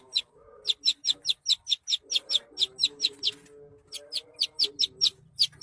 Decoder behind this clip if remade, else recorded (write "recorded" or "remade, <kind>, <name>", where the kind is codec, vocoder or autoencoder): recorded